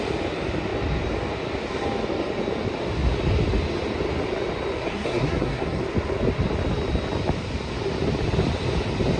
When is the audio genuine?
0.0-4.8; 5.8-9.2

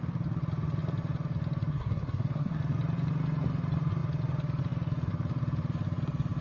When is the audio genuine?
0.0-1.7; 2.6-6.4

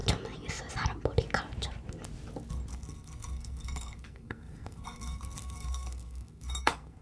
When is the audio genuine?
0.0-2.7

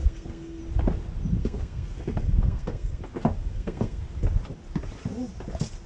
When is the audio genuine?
0.6-1.4; 3.0-3.4; 4.0-5.9

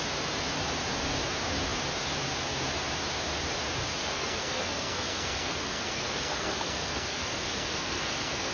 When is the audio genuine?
0.0-4.0